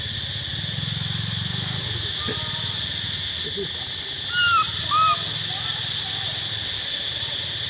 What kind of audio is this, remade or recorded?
recorded